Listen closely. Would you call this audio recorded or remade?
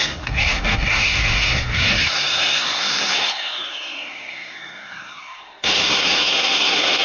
remade